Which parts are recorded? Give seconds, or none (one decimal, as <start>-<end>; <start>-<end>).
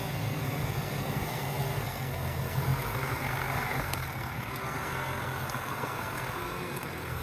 none